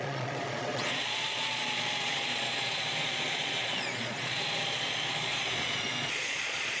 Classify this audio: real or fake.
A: fake